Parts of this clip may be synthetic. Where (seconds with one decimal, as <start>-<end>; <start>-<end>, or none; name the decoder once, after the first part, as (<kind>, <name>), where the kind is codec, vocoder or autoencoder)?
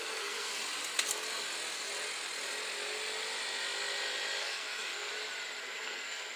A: 0.0-0.6 (codec, SNAC); 4.4-5.1; 5.6-6.4